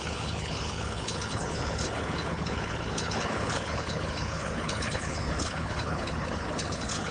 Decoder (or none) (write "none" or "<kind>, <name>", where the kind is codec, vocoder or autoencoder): codec, HILCodec